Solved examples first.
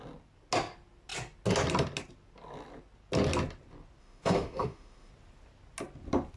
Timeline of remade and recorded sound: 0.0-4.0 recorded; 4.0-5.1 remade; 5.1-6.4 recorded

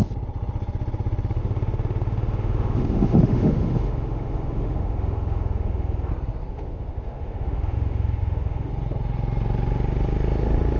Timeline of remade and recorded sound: 0.0-1.4 recorded; 1.4-6.1 remade; 6.1-6.5 recorded; 6.5-8.7 remade; 8.7-10.8 recorded

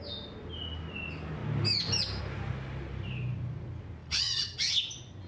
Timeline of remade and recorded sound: 0.0-4.0 recorded; 4.0-4.7 remade; 4.7-5.3 recorded